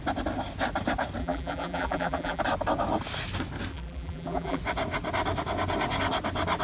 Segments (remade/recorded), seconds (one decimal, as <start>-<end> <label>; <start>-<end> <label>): 0.0-1.2 recorded; 1.2-2.4 remade; 2.4-3.7 recorded; 3.7-4.6 remade; 4.6-6.6 recorded